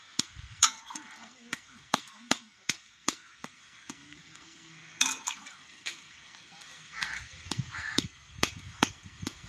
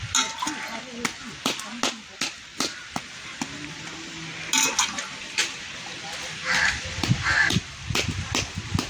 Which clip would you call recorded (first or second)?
second